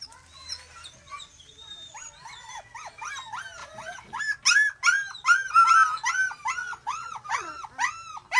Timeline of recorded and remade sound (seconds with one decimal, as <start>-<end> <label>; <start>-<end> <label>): 0.0-3.6 recorded; 3.6-4.2 remade; 4.2-6.6 recorded; 6.6-7.6 remade; 7.6-8.4 recorded